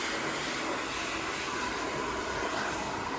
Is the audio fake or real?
real